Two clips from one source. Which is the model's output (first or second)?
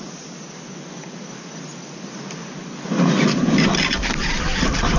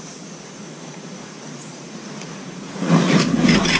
second